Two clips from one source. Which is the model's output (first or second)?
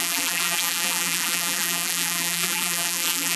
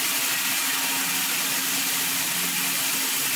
first